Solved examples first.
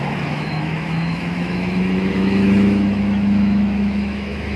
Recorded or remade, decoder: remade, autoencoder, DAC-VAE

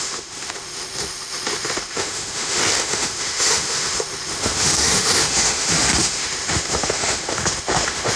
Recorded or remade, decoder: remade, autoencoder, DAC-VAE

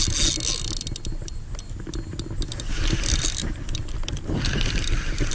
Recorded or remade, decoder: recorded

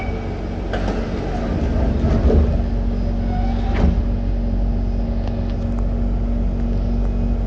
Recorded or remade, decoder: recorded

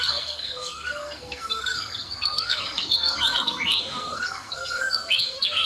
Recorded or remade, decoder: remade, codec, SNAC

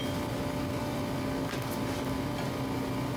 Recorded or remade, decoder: recorded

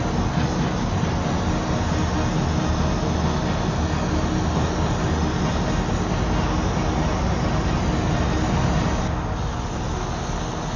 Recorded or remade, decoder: recorded